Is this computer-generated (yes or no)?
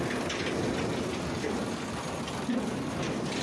no